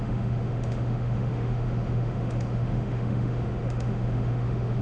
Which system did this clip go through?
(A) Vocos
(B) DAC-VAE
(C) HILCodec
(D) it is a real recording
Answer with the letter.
B